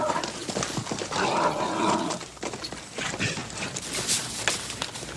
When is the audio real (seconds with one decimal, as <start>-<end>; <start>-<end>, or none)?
0.0-5.2